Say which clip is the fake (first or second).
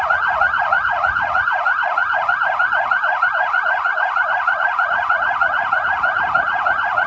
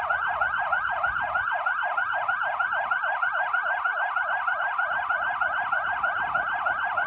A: first